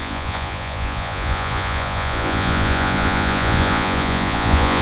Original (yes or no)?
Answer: no